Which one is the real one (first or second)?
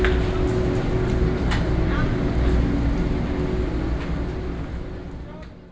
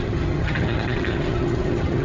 first